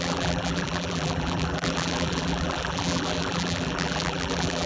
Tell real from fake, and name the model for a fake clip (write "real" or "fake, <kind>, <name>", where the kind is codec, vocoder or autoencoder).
fake, vocoder, BigVGAN v2